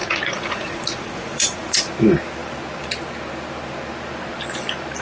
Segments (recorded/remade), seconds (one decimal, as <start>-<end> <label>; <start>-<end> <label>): 0.0-1.9 remade; 1.9-5.0 recorded